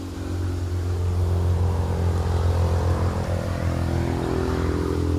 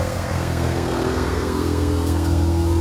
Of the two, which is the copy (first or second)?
second